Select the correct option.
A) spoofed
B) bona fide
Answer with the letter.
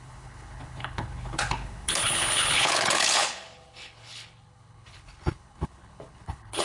A